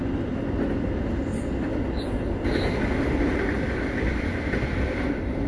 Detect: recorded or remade recorded